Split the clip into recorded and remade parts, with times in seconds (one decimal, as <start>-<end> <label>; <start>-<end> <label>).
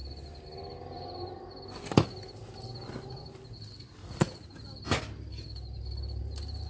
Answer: 0.0-6.7 recorded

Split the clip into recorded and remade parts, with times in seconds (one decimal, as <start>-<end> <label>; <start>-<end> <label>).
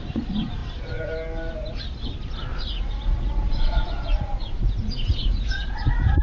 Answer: 0.0-2.5 recorded; 2.5-6.2 remade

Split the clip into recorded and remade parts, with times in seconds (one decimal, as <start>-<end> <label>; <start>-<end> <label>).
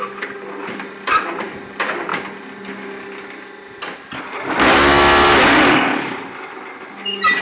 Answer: 0.0-7.4 recorded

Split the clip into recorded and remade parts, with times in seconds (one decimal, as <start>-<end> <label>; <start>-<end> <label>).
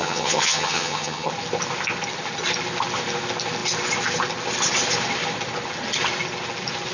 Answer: 0.0-1.3 remade; 1.3-6.9 recorded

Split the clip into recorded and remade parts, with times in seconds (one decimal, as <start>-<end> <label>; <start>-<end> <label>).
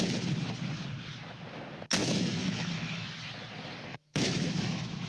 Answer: 0.0-2.0 recorded; 2.0-3.1 remade; 3.1-3.9 recorded; 3.9-5.1 remade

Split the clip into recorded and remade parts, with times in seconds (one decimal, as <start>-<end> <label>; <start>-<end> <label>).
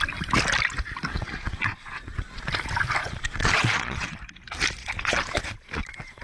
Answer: 0.0-1.1 recorded; 1.1-2.5 remade; 2.5-3.0 recorded; 3.0-4.2 remade; 4.2-4.8 recorded; 4.8-6.2 remade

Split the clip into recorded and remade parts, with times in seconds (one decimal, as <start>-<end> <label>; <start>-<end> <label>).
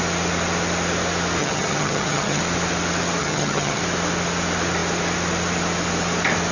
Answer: 0.0-1.4 recorded; 1.4-2.4 remade; 2.4-3.2 recorded; 3.2-3.8 remade; 3.8-6.5 recorded